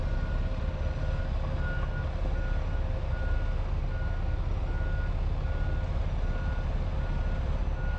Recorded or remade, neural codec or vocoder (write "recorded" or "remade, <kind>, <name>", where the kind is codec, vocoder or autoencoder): recorded